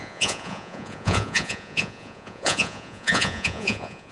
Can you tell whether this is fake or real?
fake